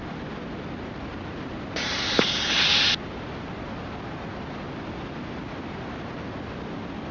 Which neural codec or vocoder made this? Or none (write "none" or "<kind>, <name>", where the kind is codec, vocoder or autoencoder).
none